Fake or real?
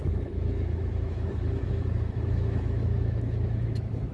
fake